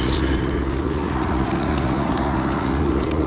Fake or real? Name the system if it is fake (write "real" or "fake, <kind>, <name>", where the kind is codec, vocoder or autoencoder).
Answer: fake, vocoder, Vocos